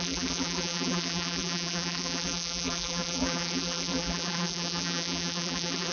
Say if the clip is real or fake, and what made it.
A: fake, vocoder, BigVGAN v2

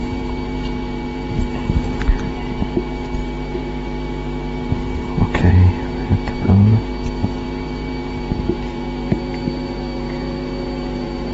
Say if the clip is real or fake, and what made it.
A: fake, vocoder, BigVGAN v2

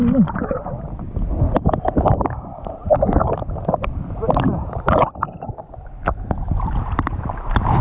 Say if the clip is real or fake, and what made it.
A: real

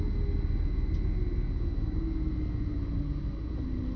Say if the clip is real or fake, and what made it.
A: real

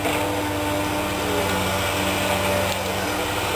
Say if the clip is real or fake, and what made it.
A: real